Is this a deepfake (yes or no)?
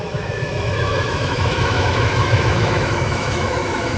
yes